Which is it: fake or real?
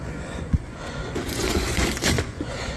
fake